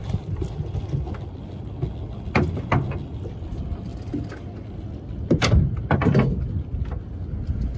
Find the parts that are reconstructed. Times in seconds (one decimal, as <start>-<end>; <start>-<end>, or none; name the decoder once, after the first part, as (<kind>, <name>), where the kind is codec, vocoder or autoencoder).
none